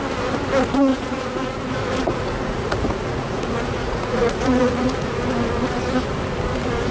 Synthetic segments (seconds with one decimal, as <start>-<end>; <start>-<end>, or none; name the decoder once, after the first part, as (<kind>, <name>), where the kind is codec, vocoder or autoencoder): 0.9-1.7 (vocoder, Vocos); 2.1-5.2